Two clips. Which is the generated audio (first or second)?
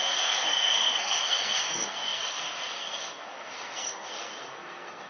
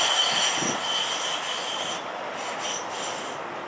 first